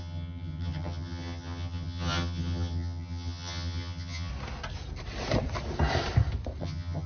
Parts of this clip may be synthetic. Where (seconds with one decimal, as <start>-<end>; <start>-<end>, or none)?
0.0-4.3; 6.6-7.1